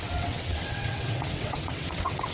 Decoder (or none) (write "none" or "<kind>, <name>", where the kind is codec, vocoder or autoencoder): vocoder, WaveNeXt